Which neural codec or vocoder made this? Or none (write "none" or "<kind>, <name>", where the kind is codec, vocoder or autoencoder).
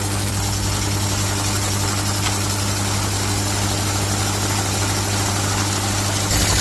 none